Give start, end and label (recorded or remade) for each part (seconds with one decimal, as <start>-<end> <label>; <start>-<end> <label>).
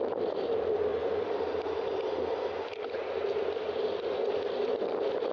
0.0-5.3 recorded